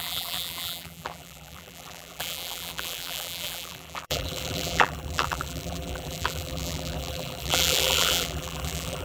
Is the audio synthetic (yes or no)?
yes